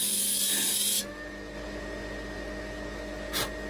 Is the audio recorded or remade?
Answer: recorded